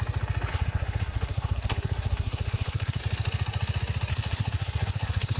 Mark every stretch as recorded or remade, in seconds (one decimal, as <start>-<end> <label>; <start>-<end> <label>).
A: 0.0-0.5 recorded; 0.5-3.0 remade; 3.0-4.1 recorded; 4.1-5.4 remade